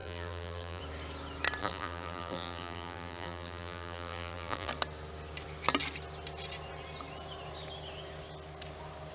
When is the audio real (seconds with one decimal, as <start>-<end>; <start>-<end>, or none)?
0.8-1.6; 4.7-9.1